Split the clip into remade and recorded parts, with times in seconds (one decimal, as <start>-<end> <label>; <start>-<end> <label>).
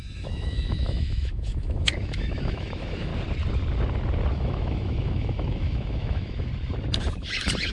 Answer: 0.0-3.1 remade; 3.1-4.3 recorded; 4.3-6.5 remade; 6.5-7.7 recorded